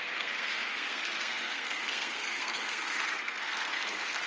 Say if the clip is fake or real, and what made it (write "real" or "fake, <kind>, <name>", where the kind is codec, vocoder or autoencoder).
fake, codec, SNAC